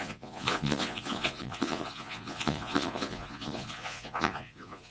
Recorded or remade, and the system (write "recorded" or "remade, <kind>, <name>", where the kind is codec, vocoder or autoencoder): remade, vocoder, Vocos